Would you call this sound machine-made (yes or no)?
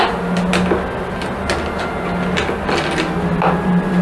no